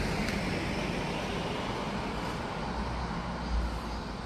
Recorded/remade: recorded